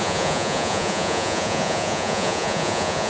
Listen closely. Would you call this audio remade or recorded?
remade